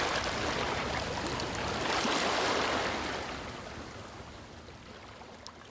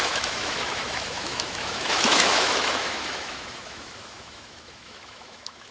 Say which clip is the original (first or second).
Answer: first